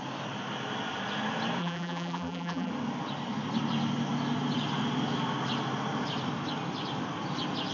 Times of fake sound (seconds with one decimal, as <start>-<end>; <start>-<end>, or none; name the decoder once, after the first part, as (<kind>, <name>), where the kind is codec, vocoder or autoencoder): 1.6-2.7 (vocoder, BigVGAN v2)